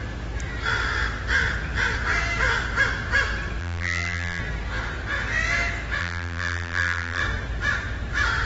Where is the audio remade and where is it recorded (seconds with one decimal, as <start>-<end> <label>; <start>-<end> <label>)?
0.0-3.6 recorded; 3.6-4.4 remade; 4.4-6.0 recorded; 6.0-7.2 remade; 7.2-8.5 recorded